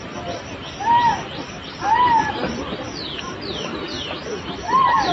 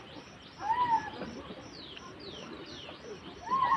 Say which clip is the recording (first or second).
first